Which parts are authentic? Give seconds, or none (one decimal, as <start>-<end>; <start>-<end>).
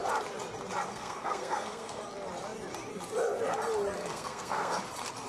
0.0-0.9; 2.0-4.0; 4.8-5.3